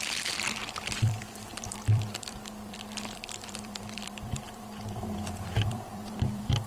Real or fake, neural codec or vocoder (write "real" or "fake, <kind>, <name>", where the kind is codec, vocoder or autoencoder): fake, vocoder, BigVGAN v2